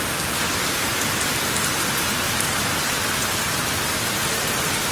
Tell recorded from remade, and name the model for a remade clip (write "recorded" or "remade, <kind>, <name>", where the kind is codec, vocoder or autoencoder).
recorded